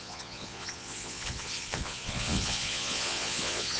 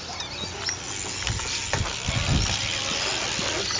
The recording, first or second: second